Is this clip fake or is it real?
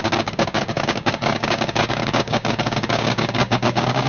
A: fake